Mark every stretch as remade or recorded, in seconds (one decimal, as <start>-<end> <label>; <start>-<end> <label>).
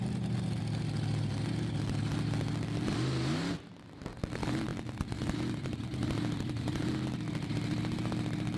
0.0-8.6 recorded